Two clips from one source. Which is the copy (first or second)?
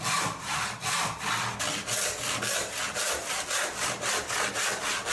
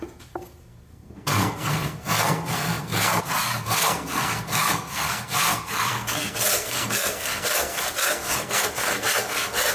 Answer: second